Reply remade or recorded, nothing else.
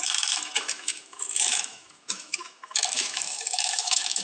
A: remade